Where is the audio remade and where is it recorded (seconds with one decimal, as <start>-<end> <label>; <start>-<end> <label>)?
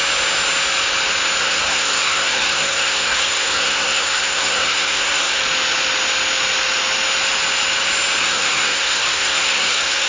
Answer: 0.0-1.4 recorded; 1.4-5.4 remade; 5.4-8.2 recorded; 8.2-10.1 remade